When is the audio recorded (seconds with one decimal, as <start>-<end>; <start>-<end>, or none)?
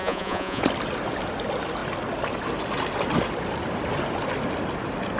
0.6-5.2